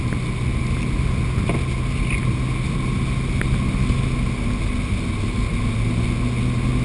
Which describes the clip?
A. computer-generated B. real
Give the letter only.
B